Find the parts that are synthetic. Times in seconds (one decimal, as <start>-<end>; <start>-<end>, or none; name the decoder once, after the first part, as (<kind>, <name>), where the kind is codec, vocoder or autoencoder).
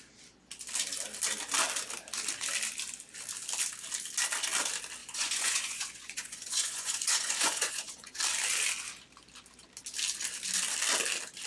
5.0-8.2 (vocoder, Vocos)